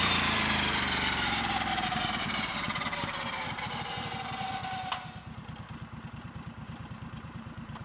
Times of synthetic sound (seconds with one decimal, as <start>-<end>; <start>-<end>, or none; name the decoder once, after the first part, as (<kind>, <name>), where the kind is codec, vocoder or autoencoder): 0.0-4.6 (vocoder, BigVGAN v2); 6.1-7.8

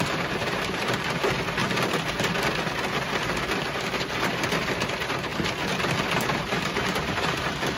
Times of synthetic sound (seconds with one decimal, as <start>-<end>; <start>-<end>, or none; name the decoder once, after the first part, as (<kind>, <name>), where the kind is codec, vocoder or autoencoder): 0.0-1.6 (vocoder, BigVGAN v2); 4.0-5.3; 6.1-7.8

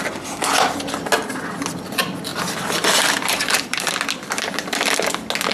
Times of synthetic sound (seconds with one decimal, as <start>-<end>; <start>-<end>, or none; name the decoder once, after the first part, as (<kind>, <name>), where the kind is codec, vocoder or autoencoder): 2.3-4.0 (vocoder, BigVGAN v2)